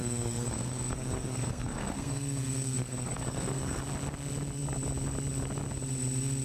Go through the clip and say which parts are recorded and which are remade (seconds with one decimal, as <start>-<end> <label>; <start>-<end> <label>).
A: 0.0-3.8 remade; 3.8-6.4 recorded